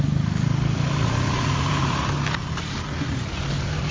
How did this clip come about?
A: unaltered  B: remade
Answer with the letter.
A